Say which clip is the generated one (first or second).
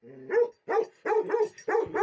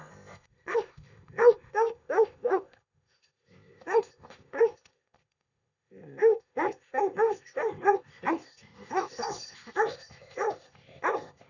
second